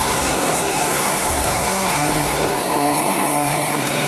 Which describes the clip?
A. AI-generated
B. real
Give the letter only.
A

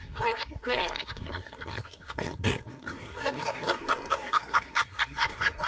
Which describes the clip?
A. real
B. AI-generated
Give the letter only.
B